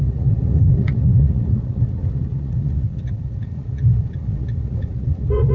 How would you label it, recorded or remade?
remade